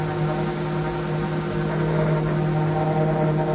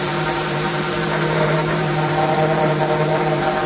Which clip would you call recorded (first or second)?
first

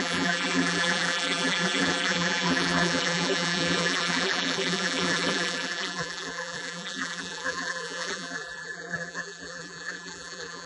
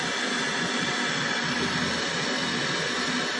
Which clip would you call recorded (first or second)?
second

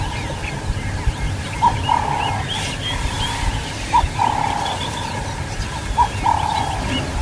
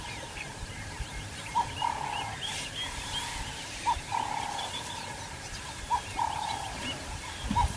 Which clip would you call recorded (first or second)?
first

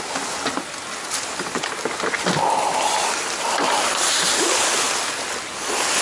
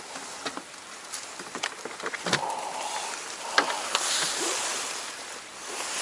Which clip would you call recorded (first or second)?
first